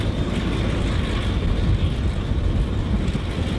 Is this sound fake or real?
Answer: real